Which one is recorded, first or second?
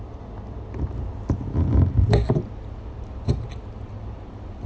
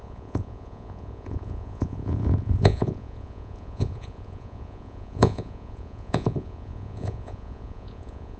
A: first